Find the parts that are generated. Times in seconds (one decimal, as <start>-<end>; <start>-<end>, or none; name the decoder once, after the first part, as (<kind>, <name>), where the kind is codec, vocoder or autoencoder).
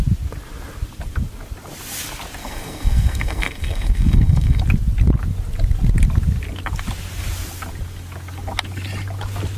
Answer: 2.4-4.6 (codec, SNAC)